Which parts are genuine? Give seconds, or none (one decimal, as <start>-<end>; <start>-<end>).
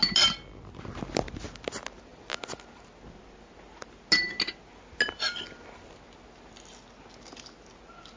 0.0-8.2